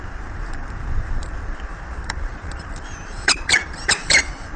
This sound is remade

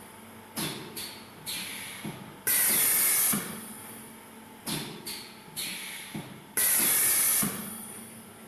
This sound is recorded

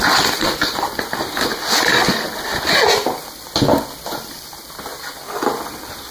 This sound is recorded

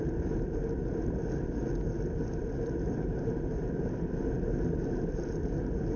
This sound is recorded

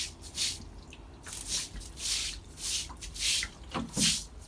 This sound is recorded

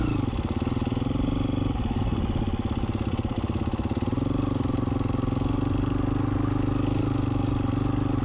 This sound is recorded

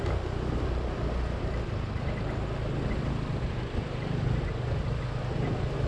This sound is recorded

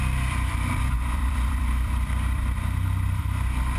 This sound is remade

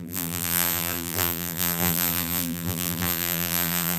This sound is remade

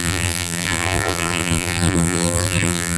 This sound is remade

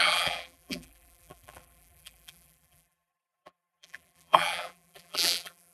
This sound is remade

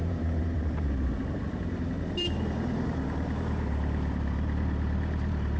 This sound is remade